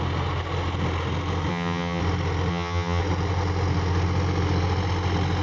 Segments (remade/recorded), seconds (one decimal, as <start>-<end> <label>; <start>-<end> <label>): 0.0-1.5 recorded; 1.5-2.0 remade; 2.0-2.5 recorded; 2.5-3.0 remade; 3.0-5.4 recorded